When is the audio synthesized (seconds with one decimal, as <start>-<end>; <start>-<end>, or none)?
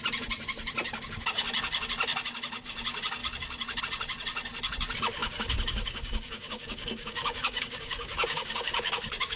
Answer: 5.2-9.4